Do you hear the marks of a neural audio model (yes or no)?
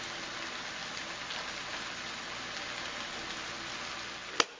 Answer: no